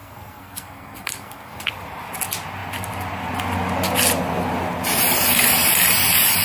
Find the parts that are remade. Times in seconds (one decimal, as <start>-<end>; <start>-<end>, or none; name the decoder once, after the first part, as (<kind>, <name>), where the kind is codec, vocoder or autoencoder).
0.0-1.7 (codec, SNAC)